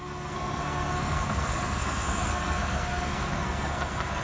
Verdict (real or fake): fake